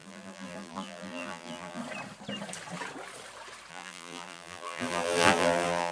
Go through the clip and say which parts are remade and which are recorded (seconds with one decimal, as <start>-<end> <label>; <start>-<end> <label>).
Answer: 0.0-1.8 remade; 1.8-3.7 recorded; 3.7-5.9 remade